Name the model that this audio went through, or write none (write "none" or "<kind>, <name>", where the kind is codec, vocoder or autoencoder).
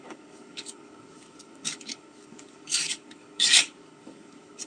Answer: codec, DAC